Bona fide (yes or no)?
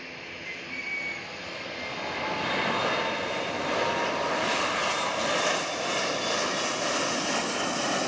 yes